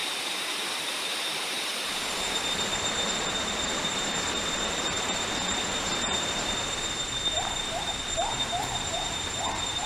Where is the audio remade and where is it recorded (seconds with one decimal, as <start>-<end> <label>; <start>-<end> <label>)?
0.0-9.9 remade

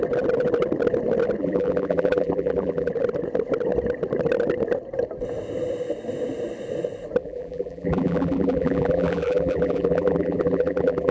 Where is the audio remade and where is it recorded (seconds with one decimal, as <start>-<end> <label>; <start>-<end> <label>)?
0.0-1.4 recorded; 1.4-2.9 remade; 2.9-7.2 recorded; 7.2-11.1 remade

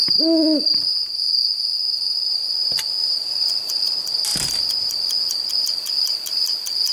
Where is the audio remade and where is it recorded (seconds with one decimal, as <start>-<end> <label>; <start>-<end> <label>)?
0.0-1.4 recorded; 1.4-3.8 remade; 3.8-6.9 recorded

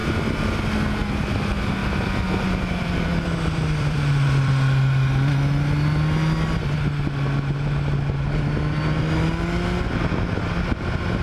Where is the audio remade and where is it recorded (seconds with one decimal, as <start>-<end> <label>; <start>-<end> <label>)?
0.0-0.7 remade; 0.7-1.8 recorded; 1.8-4.5 remade; 4.5-11.2 recorded

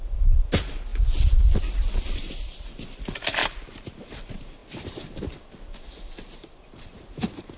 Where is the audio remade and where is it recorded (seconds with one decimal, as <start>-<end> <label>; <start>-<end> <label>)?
0.0-0.9 remade; 0.9-1.7 recorded; 1.7-3.4 remade; 3.4-3.9 recorded; 3.9-7.6 remade